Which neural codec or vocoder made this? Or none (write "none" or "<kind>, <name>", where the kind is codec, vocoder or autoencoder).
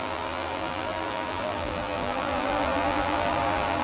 vocoder, BigVGAN v2